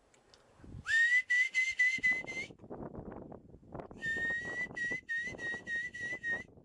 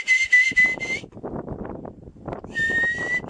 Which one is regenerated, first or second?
second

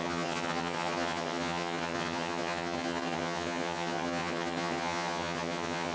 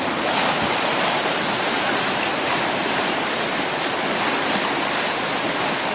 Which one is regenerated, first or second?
first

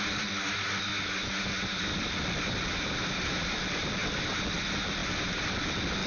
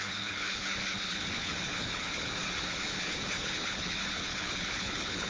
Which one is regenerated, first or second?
second